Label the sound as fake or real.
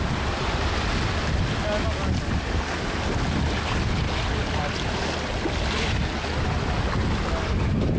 real